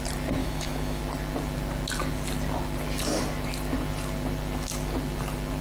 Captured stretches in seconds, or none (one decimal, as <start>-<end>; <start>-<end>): 0.0-0.4; 1.0-5.6